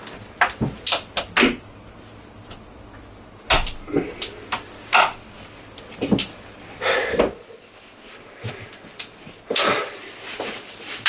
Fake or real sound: real